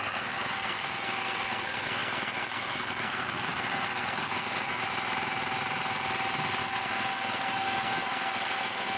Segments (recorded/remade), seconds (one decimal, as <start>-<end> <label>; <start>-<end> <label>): 0.0-4.8 remade; 4.8-6.6 recorded; 6.6-9.0 remade